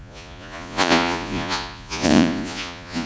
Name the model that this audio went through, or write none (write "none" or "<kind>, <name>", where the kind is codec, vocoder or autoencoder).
vocoder, Vocos